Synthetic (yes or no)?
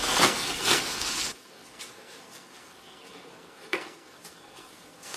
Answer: yes